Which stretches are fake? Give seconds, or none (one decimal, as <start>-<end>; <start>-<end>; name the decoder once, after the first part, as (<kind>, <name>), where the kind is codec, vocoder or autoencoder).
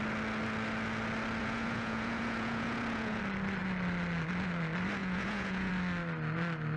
1.4-3.2 (vocoder, Vocos); 5.0-5.7